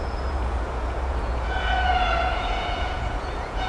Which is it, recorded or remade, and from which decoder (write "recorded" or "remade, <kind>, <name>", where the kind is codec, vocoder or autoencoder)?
remade, vocoder, Vocos